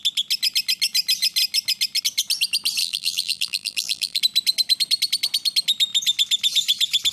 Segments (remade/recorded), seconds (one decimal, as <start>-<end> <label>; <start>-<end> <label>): 0.0-2.8 recorded; 2.8-4.2 remade; 4.2-7.1 recorded